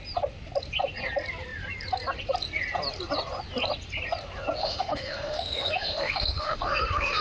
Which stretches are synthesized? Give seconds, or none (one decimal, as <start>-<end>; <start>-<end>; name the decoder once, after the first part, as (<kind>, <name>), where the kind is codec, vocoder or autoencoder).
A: 4.6-7.2 (autoencoder, DAC-VAE)